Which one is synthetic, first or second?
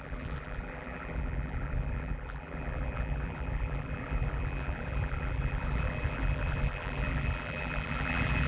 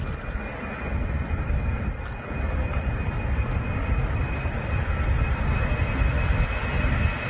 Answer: first